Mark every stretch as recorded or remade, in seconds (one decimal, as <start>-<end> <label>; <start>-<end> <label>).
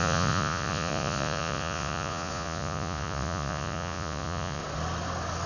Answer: 0.0-4.6 remade; 4.6-5.5 recorded